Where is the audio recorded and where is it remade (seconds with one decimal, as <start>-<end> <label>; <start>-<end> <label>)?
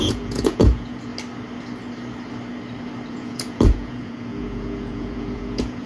0.0-1.1 remade; 1.1-3.1 recorded; 3.1-5.9 remade